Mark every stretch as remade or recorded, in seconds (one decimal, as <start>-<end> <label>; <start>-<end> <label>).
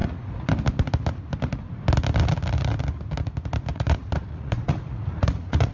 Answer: 0.0-0.6 remade; 0.6-3.7 recorded; 3.7-5.7 remade